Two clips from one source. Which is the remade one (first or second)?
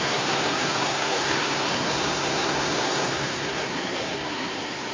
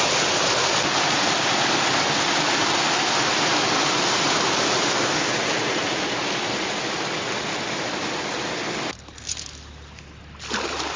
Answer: first